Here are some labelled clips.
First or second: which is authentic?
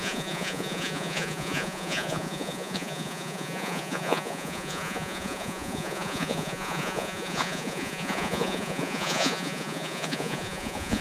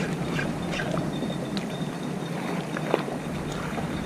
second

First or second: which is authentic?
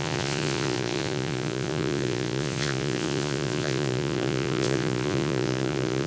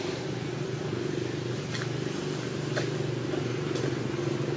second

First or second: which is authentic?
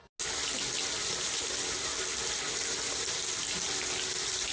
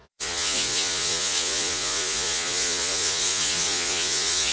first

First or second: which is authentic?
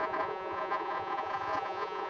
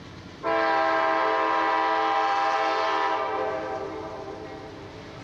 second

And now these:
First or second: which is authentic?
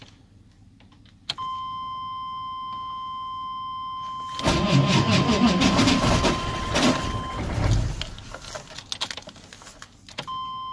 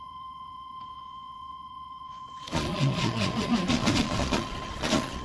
first